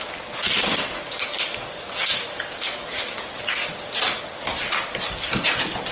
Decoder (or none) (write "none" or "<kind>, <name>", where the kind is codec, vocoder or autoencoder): none